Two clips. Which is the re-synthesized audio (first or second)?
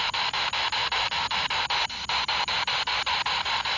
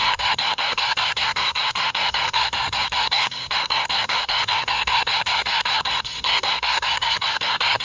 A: second